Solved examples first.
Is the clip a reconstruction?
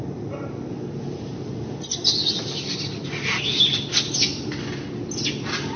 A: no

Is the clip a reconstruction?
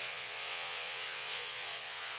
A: yes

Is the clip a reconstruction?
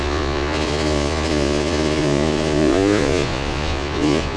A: yes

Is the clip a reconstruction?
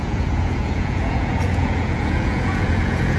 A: yes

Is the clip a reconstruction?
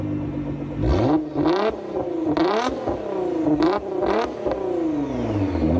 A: no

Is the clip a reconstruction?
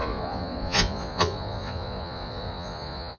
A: yes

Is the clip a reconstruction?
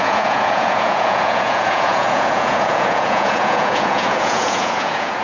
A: yes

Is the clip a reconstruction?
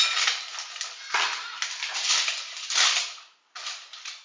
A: no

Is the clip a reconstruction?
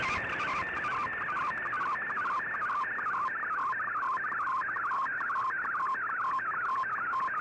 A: no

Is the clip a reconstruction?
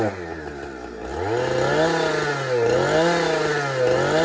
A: no